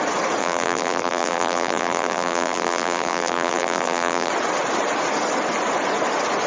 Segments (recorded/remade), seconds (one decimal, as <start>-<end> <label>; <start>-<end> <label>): 0.0-0.4 recorded; 0.4-4.3 remade; 4.3-6.5 recorded